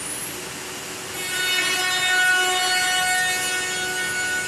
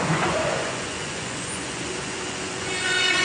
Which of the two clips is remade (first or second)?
second